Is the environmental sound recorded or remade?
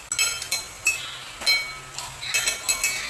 recorded